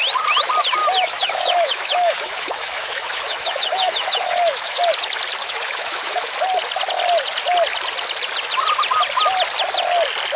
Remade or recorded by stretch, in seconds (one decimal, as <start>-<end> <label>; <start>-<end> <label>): 0.0-0.8 recorded; 0.8-4.8 remade; 4.8-5.4 recorded; 5.4-6.3 remade; 6.3-10.4 recorded